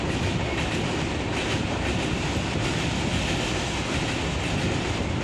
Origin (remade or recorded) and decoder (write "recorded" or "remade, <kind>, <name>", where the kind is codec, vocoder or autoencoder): recorded